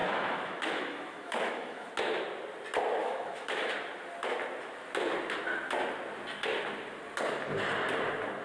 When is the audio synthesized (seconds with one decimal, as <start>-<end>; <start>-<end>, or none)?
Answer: 0.0-1.9; 3.0-3.7